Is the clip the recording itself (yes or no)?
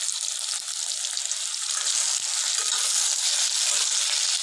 yes